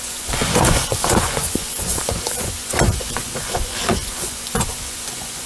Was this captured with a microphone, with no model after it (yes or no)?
no